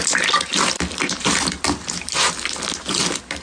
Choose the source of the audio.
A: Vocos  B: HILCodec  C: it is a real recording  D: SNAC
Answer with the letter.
C